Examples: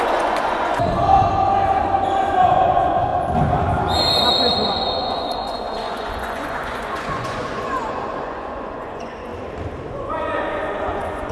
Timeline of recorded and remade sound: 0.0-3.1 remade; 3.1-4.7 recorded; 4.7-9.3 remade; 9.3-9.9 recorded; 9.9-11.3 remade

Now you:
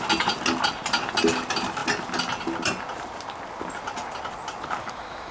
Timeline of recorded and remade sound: 0.0-4.8 recorded; 4.8-5.3 remade

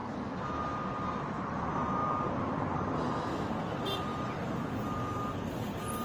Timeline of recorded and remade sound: 0.0-6.0 recorded

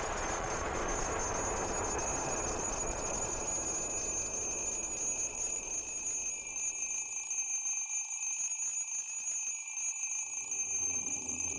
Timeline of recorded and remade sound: 0.0-0.9 remade; 0.9-2.4 recorded; 2.4-3.5 remade; 3.5-5.3 recorded; 5.3-5.7 remade; 5.7-10.8 recorded; 10.8-11.6 remade

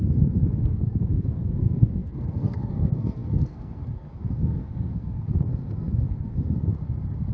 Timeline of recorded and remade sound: 0.0-6.7 remade; 6.7-7.3 recorded

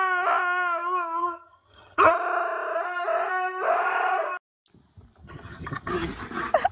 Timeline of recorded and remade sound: 0.0-1.2 recorded; 1.2-2.1 remade; 2.1-5.2 recorded; 5.2-5.9 remade; 5.9-6.7 recorded

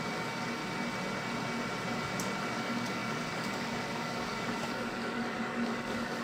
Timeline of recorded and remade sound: 0.0-0.6 remade; 0.6-2.4 recorded; 2.4-6.2 remade

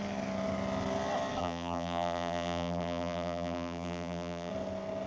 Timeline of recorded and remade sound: 0.0-1.4 recorded; 1.4-4.5 remade; 4.5-5.1 recorded